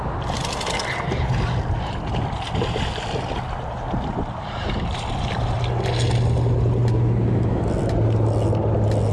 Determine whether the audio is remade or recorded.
recorded